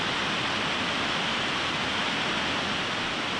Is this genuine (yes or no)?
yes